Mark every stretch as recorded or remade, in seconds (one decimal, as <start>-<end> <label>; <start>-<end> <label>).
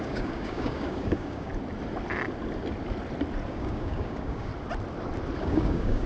0.0-1.5 remade; 1.5-3.5 recorded; 3.5-4.5 remade; 4.5-5.4 recorded; 5.4-6.1 remade